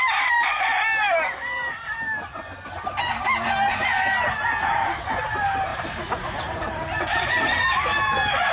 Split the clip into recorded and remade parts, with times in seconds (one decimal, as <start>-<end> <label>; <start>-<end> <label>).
0.0-5.7 recorded; 5.7-7.4 remade; 7.4-8.5 recorded